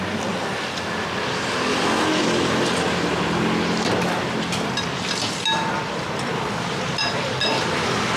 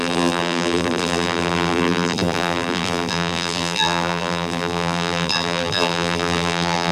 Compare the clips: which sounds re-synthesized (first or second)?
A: second